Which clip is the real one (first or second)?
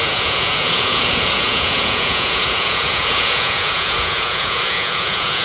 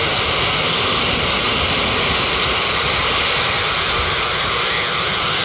second